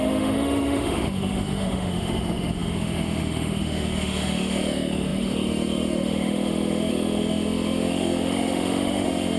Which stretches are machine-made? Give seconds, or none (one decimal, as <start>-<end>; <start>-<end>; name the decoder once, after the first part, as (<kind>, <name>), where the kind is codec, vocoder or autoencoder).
0.0-9.4 (autoencoder, DAC-VAE)